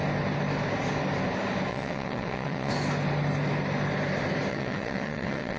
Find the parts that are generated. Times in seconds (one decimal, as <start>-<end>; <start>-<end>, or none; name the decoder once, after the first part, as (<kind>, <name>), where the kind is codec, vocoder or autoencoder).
1.7-2.7 (vocoder, WaveNeXt); 4.5-5.6